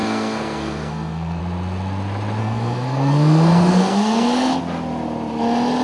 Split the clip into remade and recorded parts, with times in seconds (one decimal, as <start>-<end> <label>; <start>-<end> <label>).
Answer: 0.0-1.4 remade; 1.4-2.4 recorded; 2.4-4.6 remade; 4.6-5.8 recorded